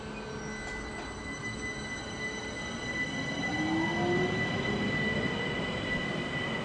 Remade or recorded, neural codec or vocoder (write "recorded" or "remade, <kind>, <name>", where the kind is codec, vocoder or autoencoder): recorded